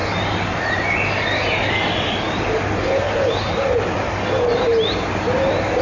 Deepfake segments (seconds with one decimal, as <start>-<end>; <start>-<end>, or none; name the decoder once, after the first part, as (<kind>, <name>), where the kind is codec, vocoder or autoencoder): none